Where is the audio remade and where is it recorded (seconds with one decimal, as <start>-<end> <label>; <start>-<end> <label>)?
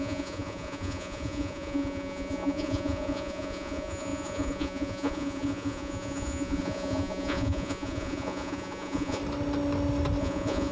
0.0-9.2 remade; 9.2-10.2 recorded; 10.2-10.7 remade